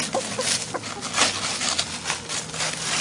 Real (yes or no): yes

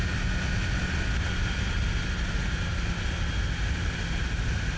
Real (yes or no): yes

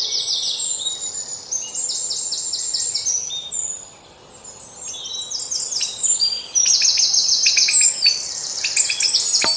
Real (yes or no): yes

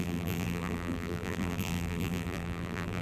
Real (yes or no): no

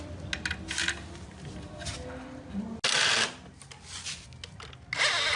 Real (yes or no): yes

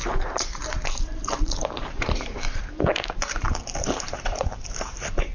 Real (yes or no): no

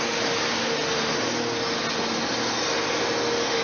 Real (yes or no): yes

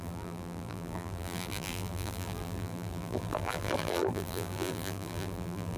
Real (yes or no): no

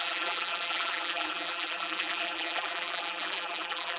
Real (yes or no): no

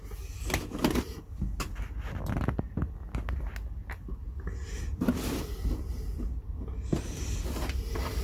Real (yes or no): yes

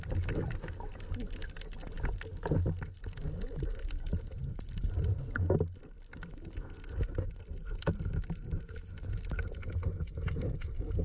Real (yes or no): yes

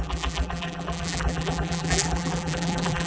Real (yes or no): no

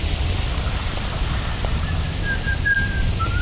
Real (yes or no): no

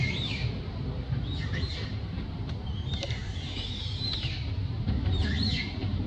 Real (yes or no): no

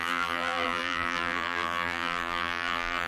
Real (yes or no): no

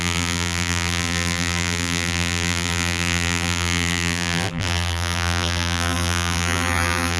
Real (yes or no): no